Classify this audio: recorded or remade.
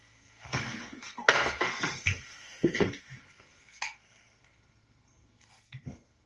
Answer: remade